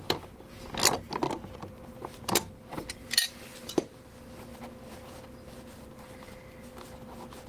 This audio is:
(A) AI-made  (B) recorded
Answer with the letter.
B